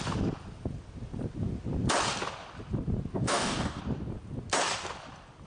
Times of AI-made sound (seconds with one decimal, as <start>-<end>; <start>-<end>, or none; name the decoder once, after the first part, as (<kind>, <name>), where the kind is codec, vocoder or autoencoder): 3.1-3.8 (codec, DAC)